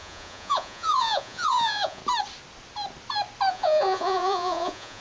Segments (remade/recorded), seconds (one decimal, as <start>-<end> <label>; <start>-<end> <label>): 0.0-2.0 remade; 2.0-3.5 recorded; 3.5-5.0 remade